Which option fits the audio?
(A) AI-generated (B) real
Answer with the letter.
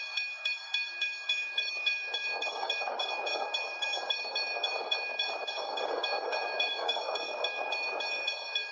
A